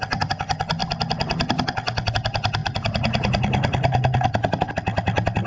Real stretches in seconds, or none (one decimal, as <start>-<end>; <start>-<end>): 0.0-2.6; 4.7-5.5